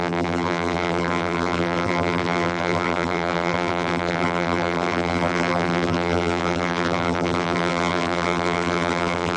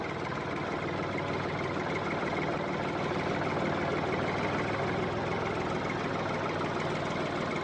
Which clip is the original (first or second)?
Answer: second